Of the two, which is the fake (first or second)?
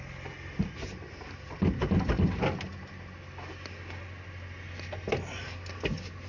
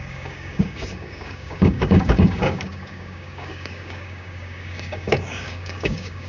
second